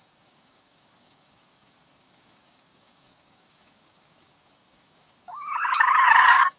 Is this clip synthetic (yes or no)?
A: yes